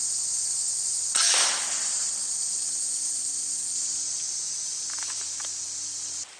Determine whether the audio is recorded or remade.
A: recorded